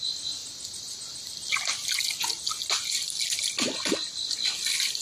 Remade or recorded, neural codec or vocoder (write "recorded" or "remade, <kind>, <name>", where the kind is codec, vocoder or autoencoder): recorded